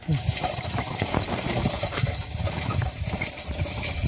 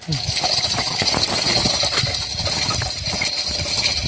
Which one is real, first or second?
second